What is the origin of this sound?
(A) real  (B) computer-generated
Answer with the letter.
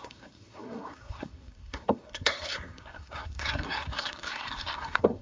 B